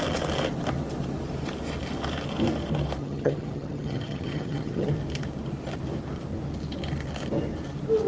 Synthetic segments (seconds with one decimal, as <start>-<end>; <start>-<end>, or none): 3.0-4.9